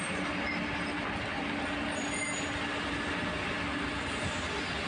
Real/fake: real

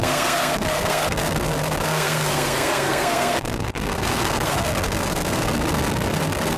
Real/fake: fake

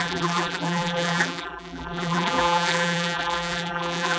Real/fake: fake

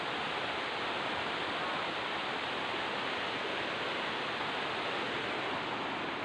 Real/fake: real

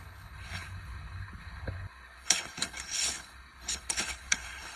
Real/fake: fake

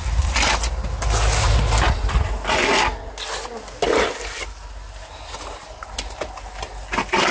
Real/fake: real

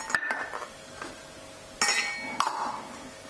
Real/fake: real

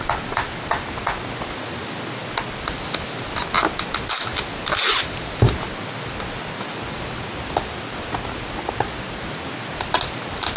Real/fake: real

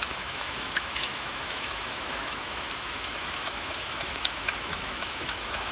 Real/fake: fake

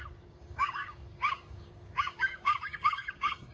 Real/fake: fake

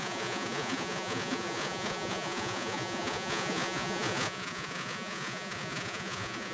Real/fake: fake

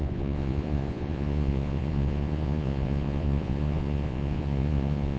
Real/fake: fake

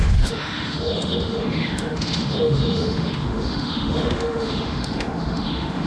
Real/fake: fake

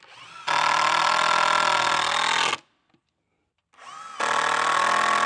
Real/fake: real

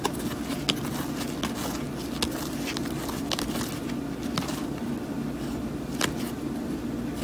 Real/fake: real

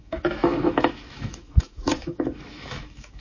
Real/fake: fake